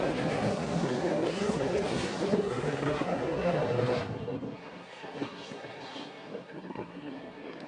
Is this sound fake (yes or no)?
yes